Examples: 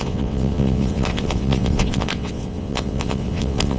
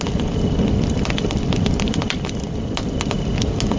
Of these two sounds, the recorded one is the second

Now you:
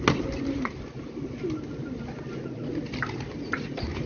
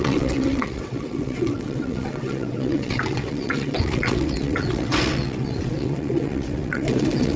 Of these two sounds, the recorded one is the first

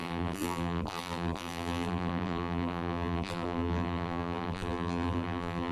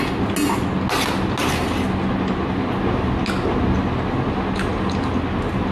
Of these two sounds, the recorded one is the second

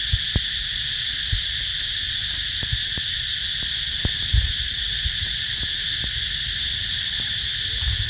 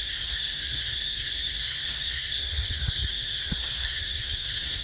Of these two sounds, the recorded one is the first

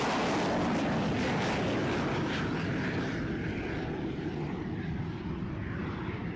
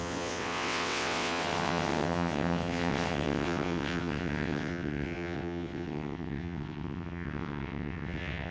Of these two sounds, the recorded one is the first